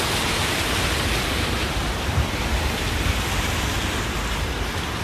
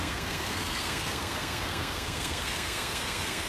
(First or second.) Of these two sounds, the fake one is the second